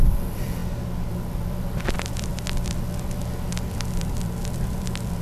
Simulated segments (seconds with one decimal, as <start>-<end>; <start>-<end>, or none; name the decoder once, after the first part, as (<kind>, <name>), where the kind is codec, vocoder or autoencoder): 0.0-0.6 (vocoder, BigVGAN v2); 1.1-2.3; 3.5-5.2